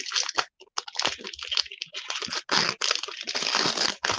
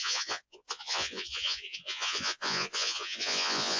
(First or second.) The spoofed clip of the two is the second